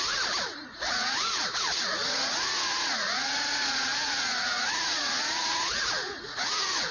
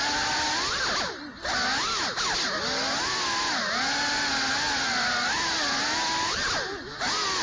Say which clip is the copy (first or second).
first